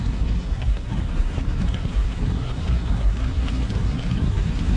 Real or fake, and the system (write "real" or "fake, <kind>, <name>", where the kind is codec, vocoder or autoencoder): fake, codec, SNAC